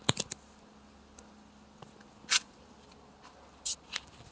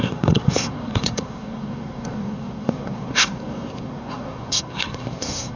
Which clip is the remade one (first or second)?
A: second